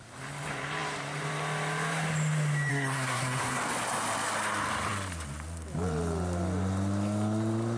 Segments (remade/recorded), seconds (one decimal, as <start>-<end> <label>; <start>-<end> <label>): 0.0-2.7 recorded; 2.7-3.6 remade; 3.6-7.8 recorded